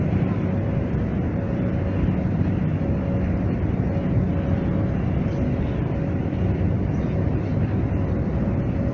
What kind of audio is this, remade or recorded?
recorded